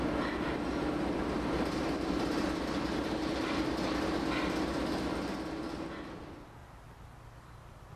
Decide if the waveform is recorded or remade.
recorded